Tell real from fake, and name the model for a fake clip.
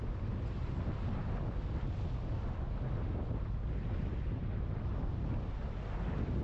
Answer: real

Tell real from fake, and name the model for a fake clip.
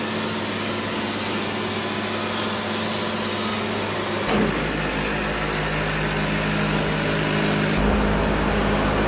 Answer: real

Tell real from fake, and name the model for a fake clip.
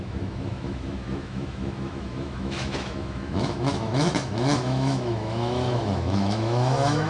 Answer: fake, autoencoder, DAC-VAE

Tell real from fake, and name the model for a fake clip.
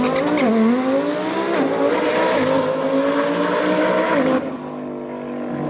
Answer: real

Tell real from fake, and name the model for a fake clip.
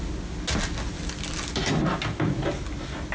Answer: real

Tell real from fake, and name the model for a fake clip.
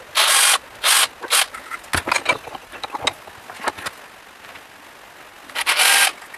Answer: real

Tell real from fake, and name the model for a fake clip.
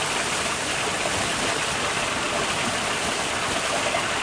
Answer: real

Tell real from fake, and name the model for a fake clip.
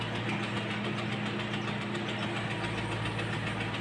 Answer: real